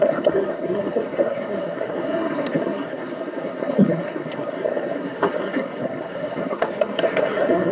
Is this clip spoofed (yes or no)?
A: yes